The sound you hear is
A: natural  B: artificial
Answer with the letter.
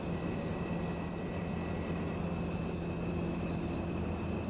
A